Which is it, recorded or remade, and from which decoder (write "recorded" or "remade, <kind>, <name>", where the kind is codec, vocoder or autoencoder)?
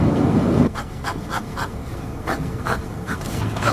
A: remade, codec, SNAC